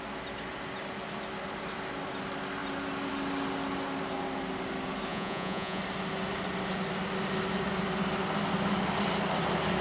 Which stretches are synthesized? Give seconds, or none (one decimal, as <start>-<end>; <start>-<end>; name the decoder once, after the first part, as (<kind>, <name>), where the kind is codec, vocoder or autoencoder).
5.1-5.8 (vocoder, Vocos)